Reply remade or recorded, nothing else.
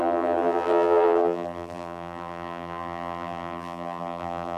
remade